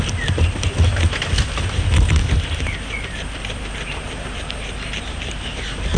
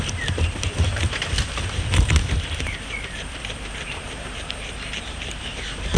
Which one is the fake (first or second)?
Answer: second